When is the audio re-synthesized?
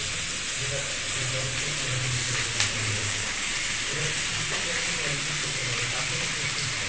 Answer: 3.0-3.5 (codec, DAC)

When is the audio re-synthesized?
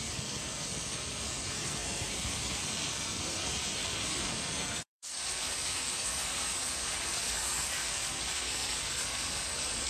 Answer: 0.0-9.9 (codec, SNAC)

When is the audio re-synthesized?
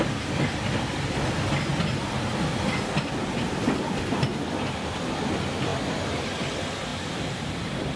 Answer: 0.0-1.7 (vocoder, BigVGAN v2); 2.3-5.7; 6.5-8.0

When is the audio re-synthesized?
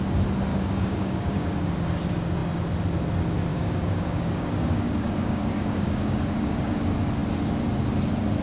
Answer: 0.5-1.7 (codec, DAC); 3.5-6.8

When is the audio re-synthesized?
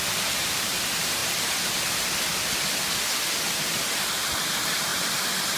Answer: 0.0-1.2 (vocoder, BigVGAN v2); 4.0-4.9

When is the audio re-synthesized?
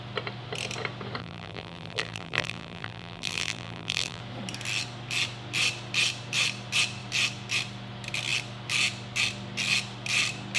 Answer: 1.2-4.2 (vocoder, BigVGAN v2)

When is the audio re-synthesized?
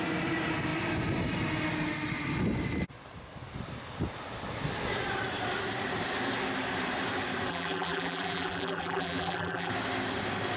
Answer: 7.5-9.7 (vocoder, BigVGAN v2)